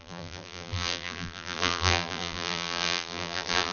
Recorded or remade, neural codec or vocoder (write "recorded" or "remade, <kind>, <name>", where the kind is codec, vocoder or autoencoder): remade, vocoder, BigVGAN v2